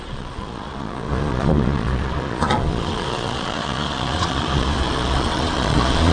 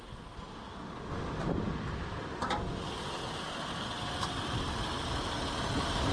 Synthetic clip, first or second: first